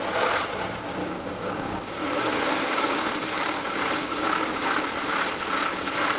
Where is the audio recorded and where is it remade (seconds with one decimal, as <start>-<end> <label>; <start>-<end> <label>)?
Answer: 0.0-1.0 recorded; 1.0-4.7 remade; 4.7-6.2 recorded